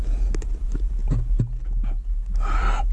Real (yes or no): yes